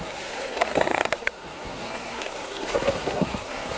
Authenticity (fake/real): fake